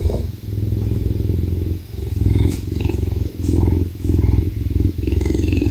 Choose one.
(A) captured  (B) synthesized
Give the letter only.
B